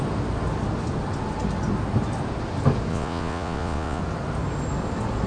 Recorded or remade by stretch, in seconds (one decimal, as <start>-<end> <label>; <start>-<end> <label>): 0.0-2.9 recorded; 2.9-4.0 remade; 4.0-5.3 recorded